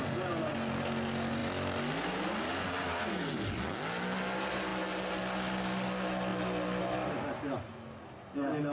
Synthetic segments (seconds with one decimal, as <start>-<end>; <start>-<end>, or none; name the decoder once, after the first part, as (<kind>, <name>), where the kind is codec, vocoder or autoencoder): none